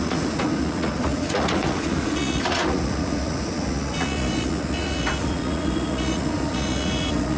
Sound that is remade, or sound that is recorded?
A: remade